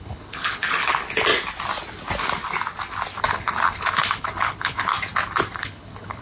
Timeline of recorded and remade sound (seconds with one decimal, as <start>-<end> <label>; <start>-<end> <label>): 0.0-1.3 remade; 1.3-3.2 recorded; 3.2-4.9 remade; 4.9-5.6 recorded; 5.6-6.2 remade